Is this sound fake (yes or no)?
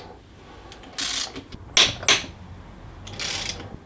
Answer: no